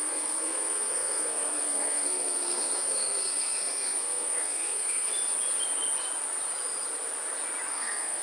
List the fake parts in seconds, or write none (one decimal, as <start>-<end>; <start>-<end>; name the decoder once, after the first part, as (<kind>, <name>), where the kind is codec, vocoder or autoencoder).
0.0-5.1 (codec, SNAC); 7.7-8.2

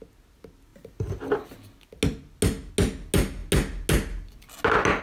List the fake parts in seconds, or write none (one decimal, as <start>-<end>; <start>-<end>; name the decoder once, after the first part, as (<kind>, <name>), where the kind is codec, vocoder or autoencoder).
none

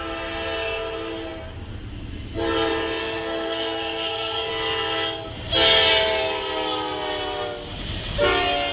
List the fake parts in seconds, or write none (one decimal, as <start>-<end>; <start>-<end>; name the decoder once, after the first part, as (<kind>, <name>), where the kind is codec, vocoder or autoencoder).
3.0-4.5 (codec, SNAC)

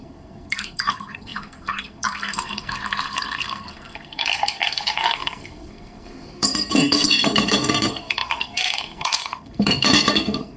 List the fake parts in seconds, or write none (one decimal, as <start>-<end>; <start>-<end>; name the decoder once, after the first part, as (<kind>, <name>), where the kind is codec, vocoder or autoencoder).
0.0-10.6 (codec, SNAC)

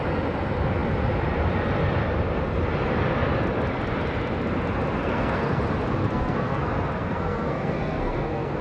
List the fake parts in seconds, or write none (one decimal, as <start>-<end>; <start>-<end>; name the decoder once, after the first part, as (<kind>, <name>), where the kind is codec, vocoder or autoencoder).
5.0-5.6 (codec, SNAC); 6.0-8.6